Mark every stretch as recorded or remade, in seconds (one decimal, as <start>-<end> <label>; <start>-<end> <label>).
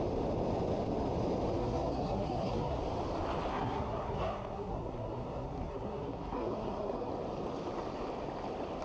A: 0.0-1.6 recorded; 1.6-2.8 remade; 2.8-3.5 recorded; 3.5-7.1 remade; 7.1-8.8 recorded